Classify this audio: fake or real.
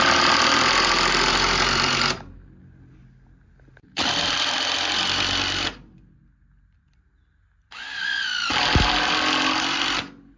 real